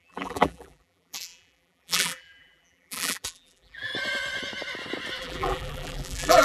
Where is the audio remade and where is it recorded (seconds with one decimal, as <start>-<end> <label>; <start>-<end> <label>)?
0.0-3.9 remade; 3.9-5.2 recorded; 5.2-6.4 remade